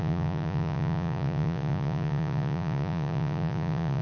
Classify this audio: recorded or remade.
remade